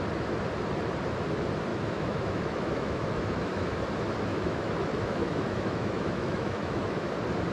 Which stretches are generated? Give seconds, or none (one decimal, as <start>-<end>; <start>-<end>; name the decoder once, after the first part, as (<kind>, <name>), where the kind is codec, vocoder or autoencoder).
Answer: 1.7-3.8 (autoencoder, DAC-VAE); 4.3-7.1